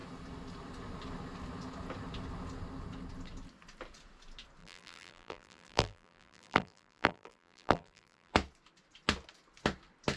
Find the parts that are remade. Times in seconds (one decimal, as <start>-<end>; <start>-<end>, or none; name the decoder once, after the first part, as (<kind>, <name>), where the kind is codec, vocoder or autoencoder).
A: 4.6-8.3 (vocoder, BigVGAN v2)

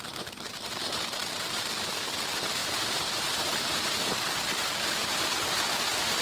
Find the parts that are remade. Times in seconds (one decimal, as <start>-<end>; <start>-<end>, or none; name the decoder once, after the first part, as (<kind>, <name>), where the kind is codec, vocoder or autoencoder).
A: 2.6-4.1 (vocoder, BigVGAN v2); 5.0-6.2